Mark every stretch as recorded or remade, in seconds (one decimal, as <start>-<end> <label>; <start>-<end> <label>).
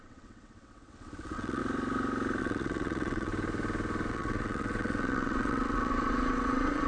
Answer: 0.0-1.6 remade; 1.6-2.4 recorded; 2.4-3.3 remade; 3.3-4.1 recorded; 4.1-6.9 remade